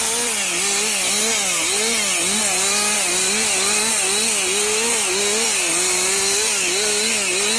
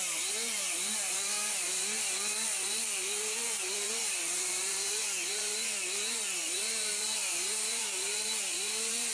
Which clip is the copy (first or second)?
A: second